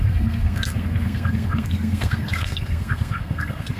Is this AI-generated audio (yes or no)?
yes